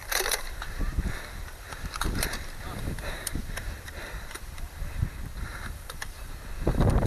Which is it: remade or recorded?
remade